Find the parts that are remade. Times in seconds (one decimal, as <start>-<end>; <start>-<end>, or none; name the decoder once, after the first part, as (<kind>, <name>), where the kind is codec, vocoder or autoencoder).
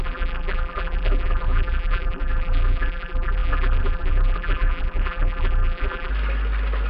0.0-6.1 (vocoder, BigVGAN v2)